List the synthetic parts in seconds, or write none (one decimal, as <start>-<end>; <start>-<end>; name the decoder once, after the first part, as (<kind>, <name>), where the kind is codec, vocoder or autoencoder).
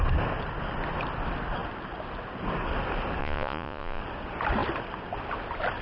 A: 3.2-4.0 (vocoder, Vocos)